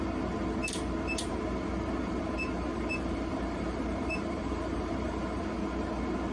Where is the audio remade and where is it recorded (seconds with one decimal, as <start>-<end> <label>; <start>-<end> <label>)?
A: 0.0-2.7 recorded; 2.7-5.4 remade; 5.4-6.3 recorded